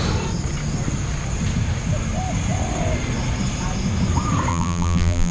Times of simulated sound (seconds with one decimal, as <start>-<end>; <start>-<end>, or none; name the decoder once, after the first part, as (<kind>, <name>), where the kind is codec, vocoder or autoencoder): 4.5-5.3 (vocoder, BigVGAN v2)